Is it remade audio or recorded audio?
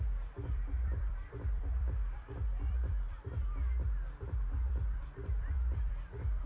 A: remade